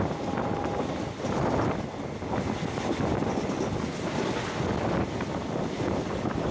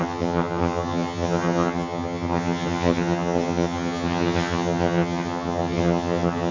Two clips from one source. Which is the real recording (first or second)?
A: first